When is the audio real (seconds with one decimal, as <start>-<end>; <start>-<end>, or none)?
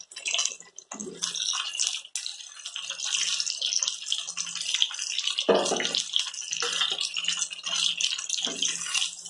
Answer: 0.0-9.3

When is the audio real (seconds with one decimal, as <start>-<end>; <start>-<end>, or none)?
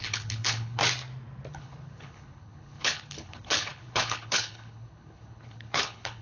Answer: 0.8-1.5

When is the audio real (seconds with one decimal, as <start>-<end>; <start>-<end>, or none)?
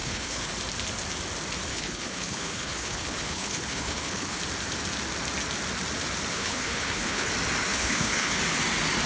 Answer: 0.5-1.7; 4.4-6.3; 7.3-7.7; 8.4-9.1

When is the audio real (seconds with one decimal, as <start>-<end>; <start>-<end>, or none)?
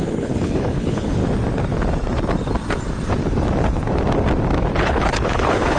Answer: 1.2-4.7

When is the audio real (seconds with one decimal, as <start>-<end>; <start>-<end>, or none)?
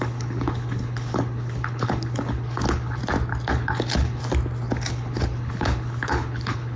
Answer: 3.0-3.5; 4.2-4.9